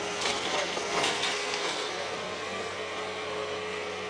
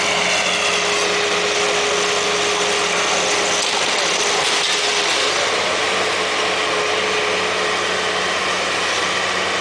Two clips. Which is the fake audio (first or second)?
first